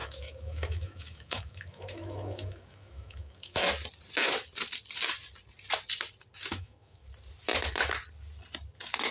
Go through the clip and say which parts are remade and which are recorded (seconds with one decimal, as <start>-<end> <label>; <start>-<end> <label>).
0.0-3.6 remade; 3.6-6.5 recorded; 6.5-7.0 remade; 7.0-9.1 recorded